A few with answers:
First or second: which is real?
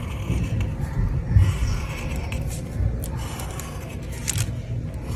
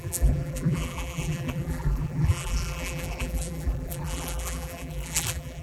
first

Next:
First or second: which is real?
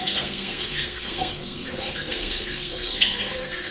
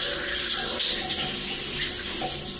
second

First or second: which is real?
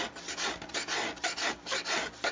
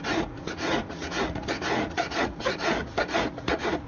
first